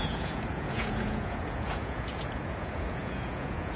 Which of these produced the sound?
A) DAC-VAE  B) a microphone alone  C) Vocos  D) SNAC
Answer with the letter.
C